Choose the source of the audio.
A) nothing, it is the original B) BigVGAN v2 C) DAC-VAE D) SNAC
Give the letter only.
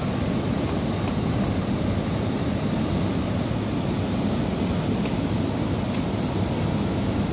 A